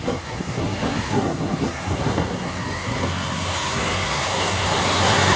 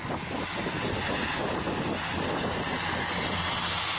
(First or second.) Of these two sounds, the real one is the second